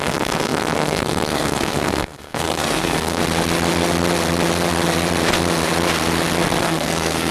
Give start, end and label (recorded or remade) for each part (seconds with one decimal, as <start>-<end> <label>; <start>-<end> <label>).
0.0-3.2 remade; 3.2-6.6 recorded; 6.6-7.3 remade